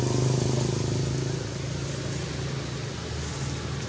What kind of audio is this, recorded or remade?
recorded